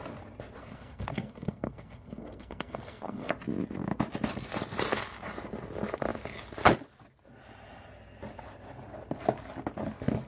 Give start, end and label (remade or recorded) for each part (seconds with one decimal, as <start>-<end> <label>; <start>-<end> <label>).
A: 0.0-0.6 recorded; 0.6-3.3 remade; 3.3-10.3 recorded